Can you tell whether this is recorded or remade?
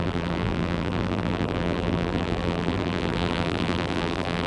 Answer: remade